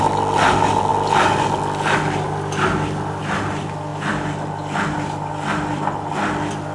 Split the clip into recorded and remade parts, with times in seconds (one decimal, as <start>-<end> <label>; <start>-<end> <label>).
0.0-6.7 recorded